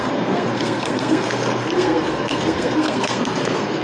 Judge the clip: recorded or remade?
remade